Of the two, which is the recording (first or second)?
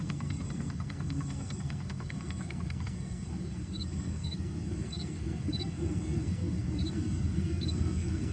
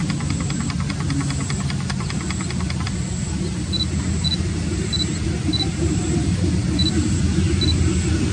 second